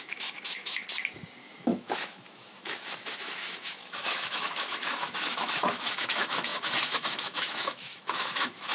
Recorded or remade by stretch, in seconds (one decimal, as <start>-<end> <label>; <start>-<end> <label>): 0.0-0.8 remade; 0.8-1.4 recorded; 1.4-8.7 remade